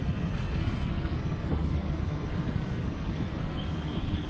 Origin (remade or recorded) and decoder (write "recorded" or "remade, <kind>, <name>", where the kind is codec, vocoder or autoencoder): remade, codec, SNAC